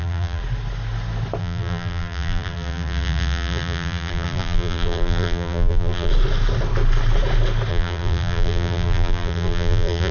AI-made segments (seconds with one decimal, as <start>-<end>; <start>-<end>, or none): 0.0-0.4; 1.4-6.1; 7.7-10.1